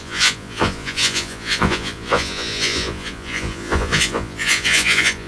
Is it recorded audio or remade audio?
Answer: remade